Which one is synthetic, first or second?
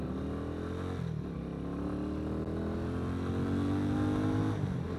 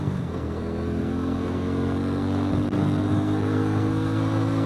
second